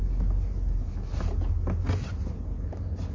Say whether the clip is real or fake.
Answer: real